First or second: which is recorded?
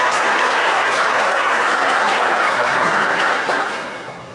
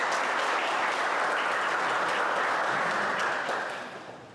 second